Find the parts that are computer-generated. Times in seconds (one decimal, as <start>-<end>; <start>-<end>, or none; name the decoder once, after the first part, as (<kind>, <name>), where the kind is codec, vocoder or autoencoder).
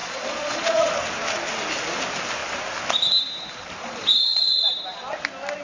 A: 0.0-0.9 (vocoder, Vocos); 3.8-4.7